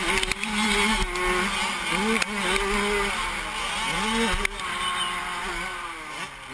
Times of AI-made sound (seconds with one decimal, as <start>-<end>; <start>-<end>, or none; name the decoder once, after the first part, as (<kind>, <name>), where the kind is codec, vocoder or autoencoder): none